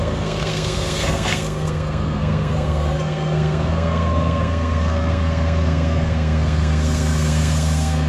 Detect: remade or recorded remade